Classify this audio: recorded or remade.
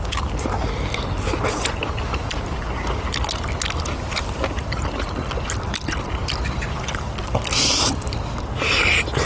recorded